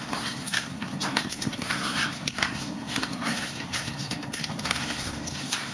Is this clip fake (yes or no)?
yes